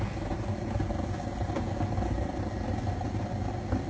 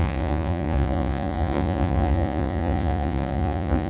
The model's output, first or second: second